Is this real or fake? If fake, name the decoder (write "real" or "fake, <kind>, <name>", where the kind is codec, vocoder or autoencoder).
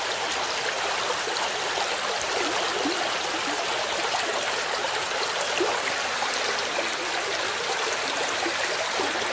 fake, vocoder, BigVGAN v2